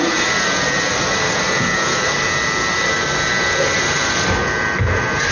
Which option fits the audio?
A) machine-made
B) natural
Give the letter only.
B